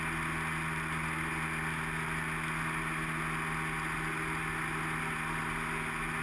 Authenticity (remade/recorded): recorded